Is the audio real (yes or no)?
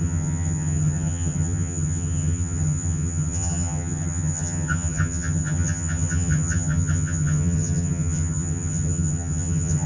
no